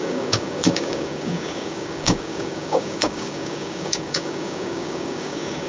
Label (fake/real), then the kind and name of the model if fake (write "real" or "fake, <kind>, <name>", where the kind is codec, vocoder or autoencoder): fake, codec, DAC